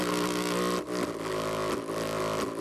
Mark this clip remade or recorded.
recorded